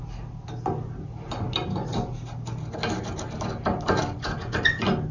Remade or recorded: recorded